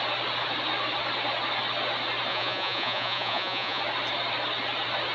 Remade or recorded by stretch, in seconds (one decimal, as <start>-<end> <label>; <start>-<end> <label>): 0.0-2.3 recorded; 2.3-3.8 remade; 3.8-5.1 recorded